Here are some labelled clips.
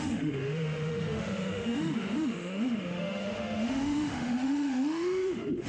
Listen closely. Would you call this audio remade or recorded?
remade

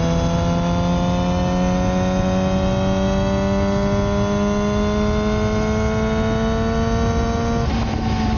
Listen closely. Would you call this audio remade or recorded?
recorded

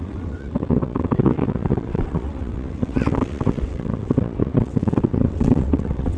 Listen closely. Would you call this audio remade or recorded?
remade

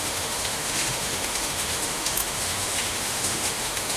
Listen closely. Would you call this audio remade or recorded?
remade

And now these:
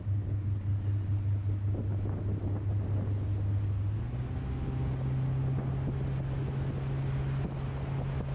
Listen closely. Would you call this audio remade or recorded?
recorded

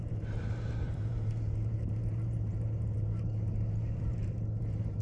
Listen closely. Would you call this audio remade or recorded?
remade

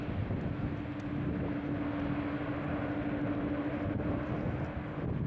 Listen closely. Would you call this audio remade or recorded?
recorded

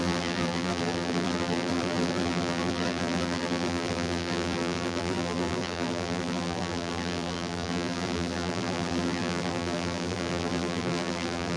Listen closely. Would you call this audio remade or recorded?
remade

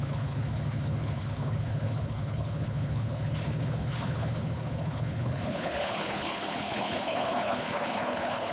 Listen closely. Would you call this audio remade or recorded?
remade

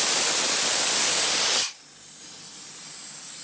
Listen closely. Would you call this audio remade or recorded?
recorded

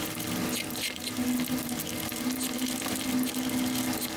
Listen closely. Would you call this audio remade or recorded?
recorded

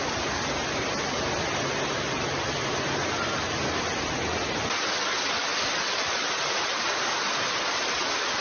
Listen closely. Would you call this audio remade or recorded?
recorded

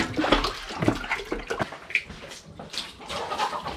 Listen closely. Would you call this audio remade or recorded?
recorded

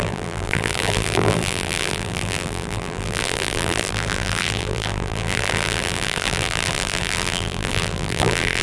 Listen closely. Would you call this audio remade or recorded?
remade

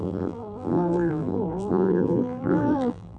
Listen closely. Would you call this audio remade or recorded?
remade